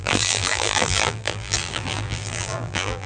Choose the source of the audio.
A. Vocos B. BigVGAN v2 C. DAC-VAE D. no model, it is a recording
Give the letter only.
B